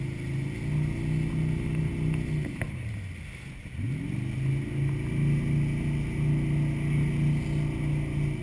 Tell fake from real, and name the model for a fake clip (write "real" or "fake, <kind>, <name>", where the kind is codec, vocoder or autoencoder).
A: real